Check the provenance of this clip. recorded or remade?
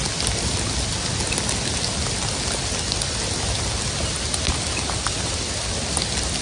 recorded